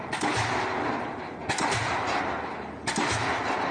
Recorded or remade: recorded